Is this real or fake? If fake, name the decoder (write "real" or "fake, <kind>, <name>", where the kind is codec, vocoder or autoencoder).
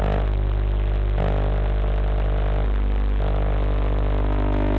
real